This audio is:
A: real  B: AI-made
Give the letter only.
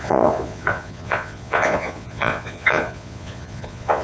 B